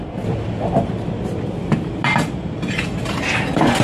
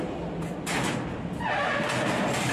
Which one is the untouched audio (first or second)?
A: second